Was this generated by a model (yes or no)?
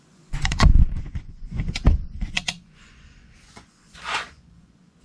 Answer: yes